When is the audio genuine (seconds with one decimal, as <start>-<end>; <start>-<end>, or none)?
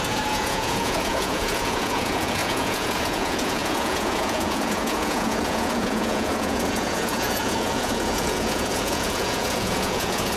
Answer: none